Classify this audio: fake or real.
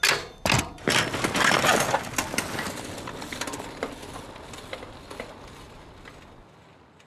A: real